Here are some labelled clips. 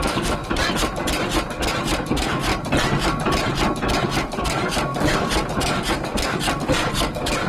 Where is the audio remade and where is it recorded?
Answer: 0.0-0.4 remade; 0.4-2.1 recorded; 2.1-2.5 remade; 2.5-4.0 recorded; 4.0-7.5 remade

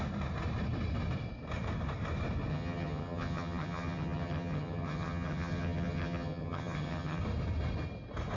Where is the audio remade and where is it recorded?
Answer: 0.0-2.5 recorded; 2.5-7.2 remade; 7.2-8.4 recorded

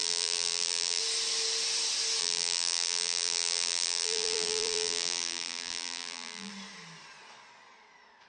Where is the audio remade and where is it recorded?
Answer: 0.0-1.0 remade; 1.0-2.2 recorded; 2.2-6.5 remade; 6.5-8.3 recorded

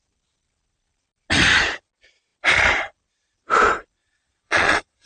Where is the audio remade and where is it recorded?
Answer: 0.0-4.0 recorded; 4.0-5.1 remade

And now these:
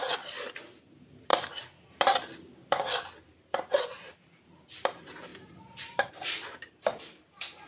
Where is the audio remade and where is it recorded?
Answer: 0.0-1.3 recorded; 1.3-3.1 remade; 3.1-5.3 recorded; 5.3-6.1 remade; 6.1-7.7 recorded